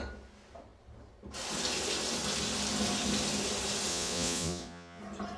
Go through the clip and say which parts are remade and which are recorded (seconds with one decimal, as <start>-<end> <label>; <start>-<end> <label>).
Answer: 0.0-3.9 recorded; 3.9-5.0 remade; 5.0-5.4 recorded